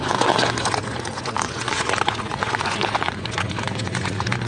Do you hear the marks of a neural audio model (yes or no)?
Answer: yes